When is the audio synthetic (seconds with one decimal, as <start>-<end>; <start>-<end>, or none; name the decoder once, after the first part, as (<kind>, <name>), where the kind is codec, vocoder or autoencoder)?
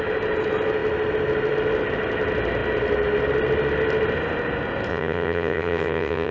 4.9-6.3 (vocoder, HiFi-GAN)